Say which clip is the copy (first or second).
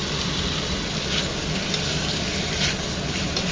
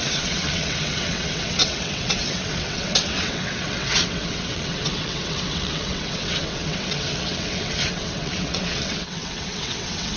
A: second